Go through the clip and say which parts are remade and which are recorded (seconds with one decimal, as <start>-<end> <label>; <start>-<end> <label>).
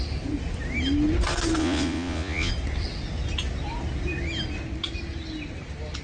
0.0-1.6 recorded; 1.6-2.5 remade; 2.5-6.0 recorded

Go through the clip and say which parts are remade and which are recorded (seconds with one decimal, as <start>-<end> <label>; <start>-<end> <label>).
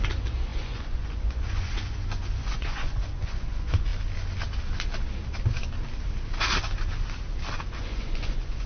0.0-3.9 remade; 3.9-7.7 recorded; 7.7-8.7 remade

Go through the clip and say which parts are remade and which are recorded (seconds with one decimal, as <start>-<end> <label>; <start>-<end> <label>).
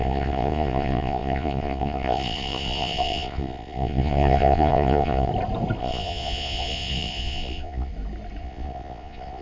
0.0-5.3 remade; 5.3-5.8 recorded; 5.8-7.9 remade; 7.9-8.4 recorded; 8.4-9.4 remade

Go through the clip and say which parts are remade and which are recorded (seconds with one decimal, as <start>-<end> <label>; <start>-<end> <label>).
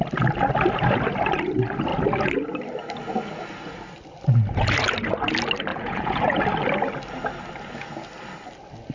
0.0-5.7 recorded; 5.7-6.4 remade; 6.4-8.9 recorded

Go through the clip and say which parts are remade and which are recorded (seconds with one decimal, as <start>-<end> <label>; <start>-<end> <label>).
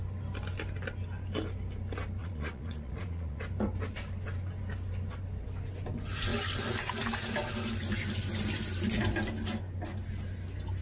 0.0-2.2 recorded; 2.2-3.4 remade; 3.4-10.8 recorded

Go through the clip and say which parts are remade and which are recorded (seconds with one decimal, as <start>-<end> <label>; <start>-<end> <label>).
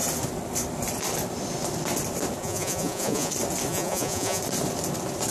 0.0-2.4 recorded; 2.4-3.3 remade; 3.3-3.7 recorded; 3.7-4.4 remade; 4.4-5.3 recorded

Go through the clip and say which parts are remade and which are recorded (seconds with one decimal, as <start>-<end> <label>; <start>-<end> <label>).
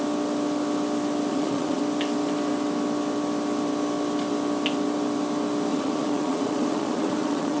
0.0-1.3 recorded; 1.3-1.8 remade; 1.8-5.7 recorded; 5.7-7.6 remade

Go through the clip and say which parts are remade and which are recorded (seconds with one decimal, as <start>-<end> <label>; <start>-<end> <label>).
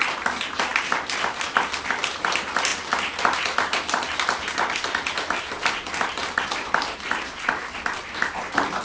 0.0-8.8 recorded